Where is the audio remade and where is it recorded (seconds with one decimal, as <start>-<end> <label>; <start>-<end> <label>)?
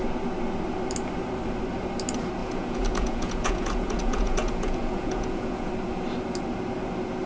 0.0-2.4 recorded; 2.4-5.7 remade; 5.7-7.3 recorded